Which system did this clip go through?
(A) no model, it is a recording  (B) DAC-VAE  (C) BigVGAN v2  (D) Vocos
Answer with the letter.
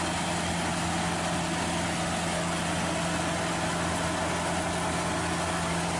A